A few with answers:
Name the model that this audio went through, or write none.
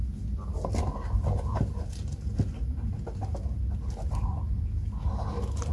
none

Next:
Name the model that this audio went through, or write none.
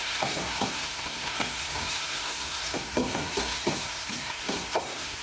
codec, SNAC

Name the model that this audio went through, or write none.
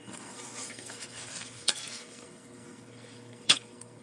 codec, SNAC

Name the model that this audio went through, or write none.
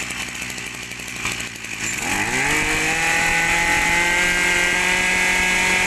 none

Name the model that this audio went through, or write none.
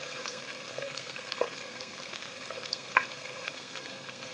codec, SNAC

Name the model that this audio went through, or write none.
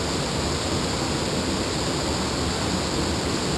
none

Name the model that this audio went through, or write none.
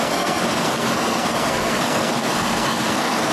codec, SNAC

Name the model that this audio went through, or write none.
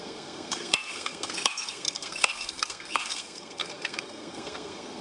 codec, SNAC